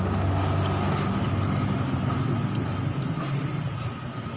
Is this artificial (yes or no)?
no